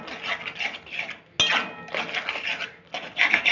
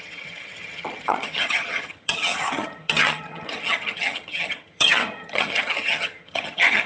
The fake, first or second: second